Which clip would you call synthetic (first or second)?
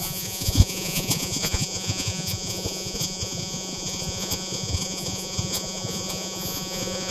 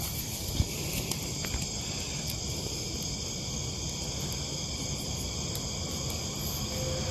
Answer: first